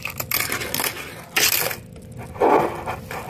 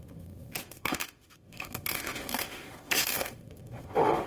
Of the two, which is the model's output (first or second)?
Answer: second